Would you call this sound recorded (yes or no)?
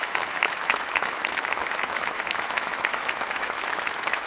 no